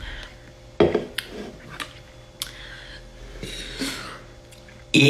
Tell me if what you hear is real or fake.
real